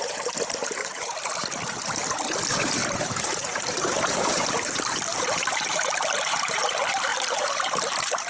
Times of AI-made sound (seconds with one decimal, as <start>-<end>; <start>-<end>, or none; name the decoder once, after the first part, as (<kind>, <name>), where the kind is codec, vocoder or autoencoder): 0.6-1.3 (vocoder, BigVGAN v2); 2.8-6.6; 7.1-8.3